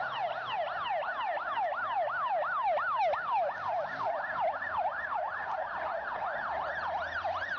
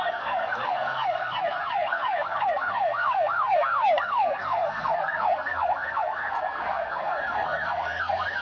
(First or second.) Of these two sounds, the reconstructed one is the second